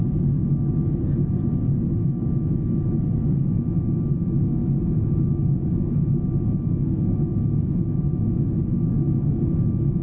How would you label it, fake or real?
real